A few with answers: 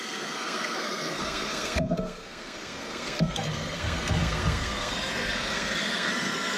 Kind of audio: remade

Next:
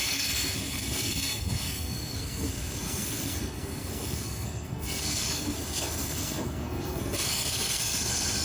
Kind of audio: remade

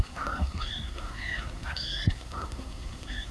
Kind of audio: remade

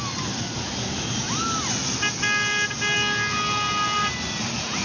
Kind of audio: recorded